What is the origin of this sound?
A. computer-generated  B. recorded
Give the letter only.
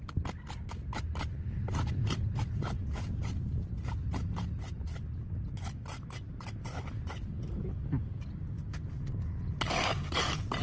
B